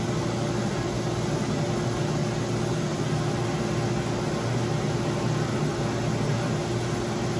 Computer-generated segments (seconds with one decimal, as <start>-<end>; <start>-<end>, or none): none